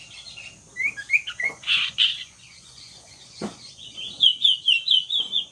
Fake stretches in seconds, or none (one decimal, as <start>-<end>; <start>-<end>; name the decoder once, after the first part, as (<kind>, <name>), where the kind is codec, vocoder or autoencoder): 1.3-5.5 (vocoder, Vocos)